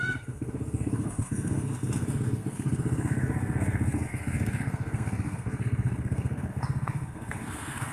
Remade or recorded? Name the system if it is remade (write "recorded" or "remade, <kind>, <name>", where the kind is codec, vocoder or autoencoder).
remade, codec, SNAC